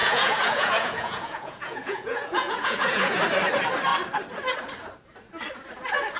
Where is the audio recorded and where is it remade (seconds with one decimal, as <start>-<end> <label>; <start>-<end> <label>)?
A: 0.0-3.2 remade; 3.2-6.2 recorded